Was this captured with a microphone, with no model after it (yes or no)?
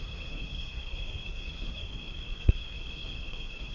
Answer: no